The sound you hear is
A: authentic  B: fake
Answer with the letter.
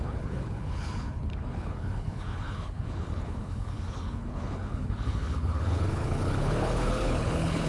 B